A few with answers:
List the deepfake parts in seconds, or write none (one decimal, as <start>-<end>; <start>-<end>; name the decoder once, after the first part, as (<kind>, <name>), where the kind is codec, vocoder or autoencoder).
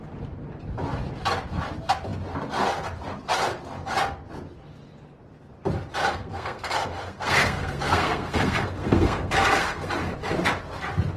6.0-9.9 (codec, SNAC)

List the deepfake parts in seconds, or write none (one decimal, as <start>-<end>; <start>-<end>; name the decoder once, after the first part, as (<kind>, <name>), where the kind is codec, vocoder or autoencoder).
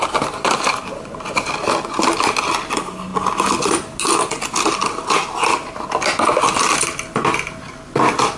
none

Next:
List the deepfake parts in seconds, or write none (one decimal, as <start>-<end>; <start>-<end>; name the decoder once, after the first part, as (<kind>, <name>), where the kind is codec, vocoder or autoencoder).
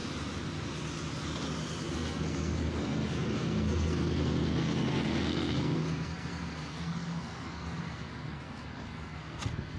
1.9-9.8 (codec, SNAC)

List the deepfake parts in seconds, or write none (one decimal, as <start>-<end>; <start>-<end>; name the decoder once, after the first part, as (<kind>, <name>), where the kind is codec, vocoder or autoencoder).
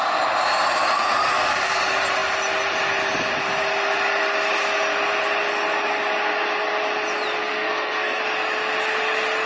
1.3-1.8 (codec, SNAC); 7.4-8.2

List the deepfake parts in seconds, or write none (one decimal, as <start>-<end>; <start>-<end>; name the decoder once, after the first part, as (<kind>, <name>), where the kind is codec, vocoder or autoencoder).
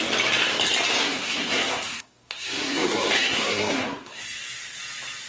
1.0-4.2 (codec, SNAC)